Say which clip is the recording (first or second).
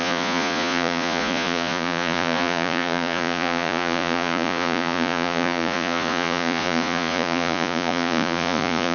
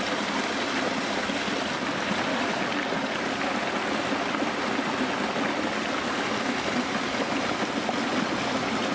second